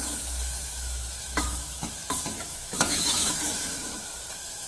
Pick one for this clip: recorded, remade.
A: remade